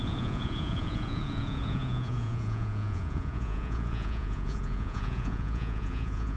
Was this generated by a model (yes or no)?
yes